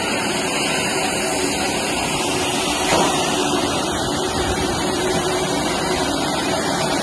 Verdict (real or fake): fake